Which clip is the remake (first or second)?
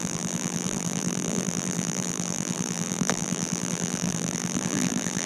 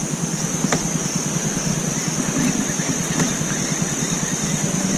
first